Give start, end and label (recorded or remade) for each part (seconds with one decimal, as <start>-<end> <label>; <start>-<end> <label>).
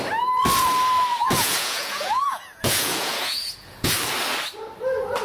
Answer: 0.0-1.1 recorded; 1.1-3.9 remade; 3.9-5.2 recorded